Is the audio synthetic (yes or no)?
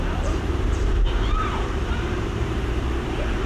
yes